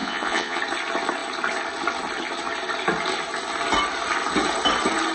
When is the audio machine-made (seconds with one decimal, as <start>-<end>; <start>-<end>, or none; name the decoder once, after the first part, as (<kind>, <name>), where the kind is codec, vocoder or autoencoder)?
0.0-0.6 (vocoder, Vocos)